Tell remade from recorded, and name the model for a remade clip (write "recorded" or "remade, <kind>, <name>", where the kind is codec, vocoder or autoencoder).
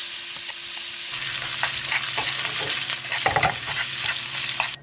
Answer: recorded